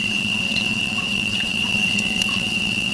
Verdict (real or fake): fake